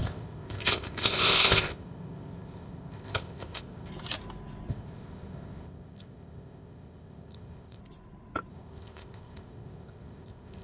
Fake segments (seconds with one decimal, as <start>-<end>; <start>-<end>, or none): 0.0-3.9; 4.7-7.8; 8.5-10.6